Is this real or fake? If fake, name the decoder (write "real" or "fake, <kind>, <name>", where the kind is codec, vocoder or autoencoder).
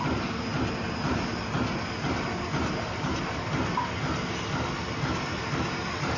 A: real